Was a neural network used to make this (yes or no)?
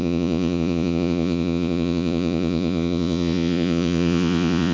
yes